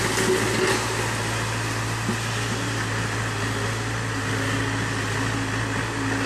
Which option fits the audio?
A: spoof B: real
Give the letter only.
B